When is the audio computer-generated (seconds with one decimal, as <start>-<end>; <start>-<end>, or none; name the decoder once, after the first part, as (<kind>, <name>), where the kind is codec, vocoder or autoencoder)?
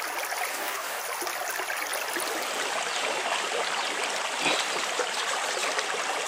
0.5-1.0 (codec, DAC)